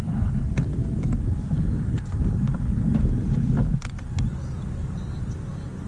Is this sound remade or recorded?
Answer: recorded